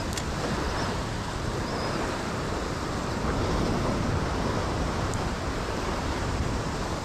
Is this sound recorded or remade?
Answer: remade